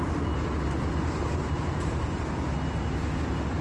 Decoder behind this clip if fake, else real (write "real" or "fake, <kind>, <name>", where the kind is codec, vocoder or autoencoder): real